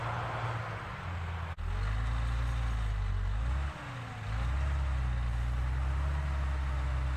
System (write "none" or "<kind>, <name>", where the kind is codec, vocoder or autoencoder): none